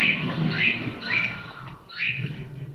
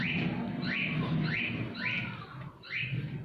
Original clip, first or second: second